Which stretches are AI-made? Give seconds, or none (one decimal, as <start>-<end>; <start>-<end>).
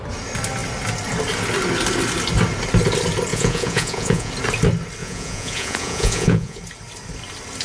3.3-4.3; 5.0-6.6